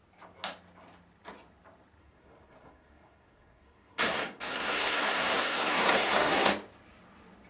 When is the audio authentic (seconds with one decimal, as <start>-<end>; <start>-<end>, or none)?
0.0-2.0; 6.5-7.5